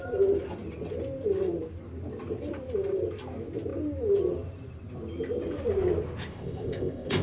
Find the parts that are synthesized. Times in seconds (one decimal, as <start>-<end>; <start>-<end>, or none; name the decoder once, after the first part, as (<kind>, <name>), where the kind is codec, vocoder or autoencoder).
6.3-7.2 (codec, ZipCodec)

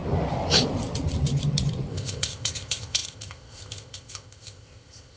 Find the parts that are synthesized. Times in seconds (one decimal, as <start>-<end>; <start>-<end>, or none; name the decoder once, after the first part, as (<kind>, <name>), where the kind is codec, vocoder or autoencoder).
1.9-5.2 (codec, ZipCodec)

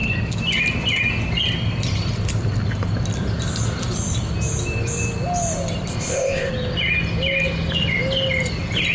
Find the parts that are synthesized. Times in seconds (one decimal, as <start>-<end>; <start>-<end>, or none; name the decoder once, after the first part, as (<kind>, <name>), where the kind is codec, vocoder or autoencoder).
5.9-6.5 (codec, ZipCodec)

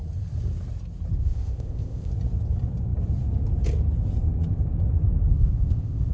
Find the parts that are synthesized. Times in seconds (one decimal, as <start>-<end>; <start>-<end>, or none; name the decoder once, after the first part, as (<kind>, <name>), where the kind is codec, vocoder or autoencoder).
1.2-2.1 (codec, ZipCodec); 5.3-6.1

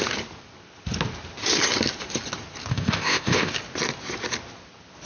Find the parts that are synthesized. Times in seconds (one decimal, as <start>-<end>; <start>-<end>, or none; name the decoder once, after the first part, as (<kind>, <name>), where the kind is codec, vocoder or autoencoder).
2.7-3.5 (codec, ZipCodec)

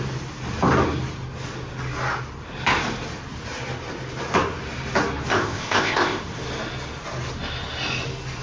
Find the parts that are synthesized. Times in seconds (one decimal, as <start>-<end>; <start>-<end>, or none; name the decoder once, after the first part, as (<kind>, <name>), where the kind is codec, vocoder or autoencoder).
5.3-6.2 (codec, ZipCodec)